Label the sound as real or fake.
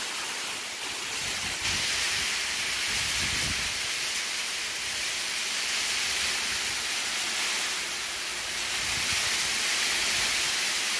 real